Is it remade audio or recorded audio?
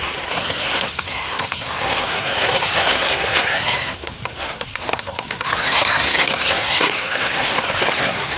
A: remade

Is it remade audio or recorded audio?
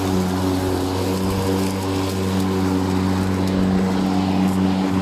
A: recorded